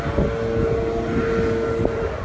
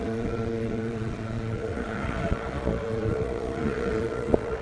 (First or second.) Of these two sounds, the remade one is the second